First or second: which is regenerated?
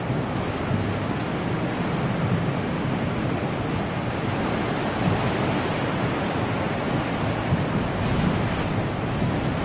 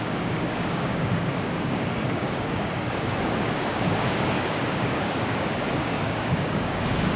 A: second